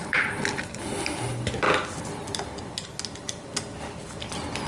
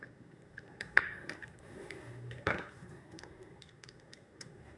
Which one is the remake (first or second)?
second